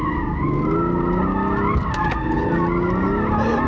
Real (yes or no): yes